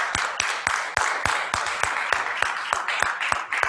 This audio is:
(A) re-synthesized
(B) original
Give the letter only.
B